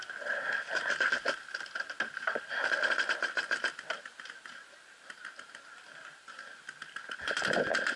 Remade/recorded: recorded